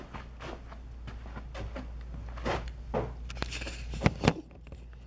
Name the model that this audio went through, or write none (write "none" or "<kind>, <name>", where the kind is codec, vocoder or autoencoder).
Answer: none